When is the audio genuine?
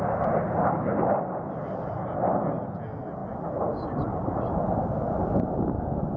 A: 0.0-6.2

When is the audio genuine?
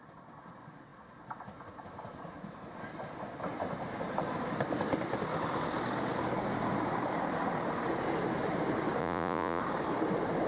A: 0.0-9.0; 9.6-10.5